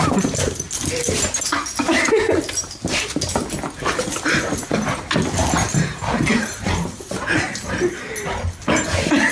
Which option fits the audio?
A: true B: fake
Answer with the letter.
A